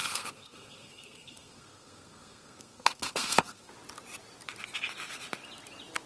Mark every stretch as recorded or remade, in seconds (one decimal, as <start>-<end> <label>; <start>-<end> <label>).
0.0-3.7 remade; 3.7-6.1 recorded